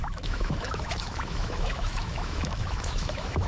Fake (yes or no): yes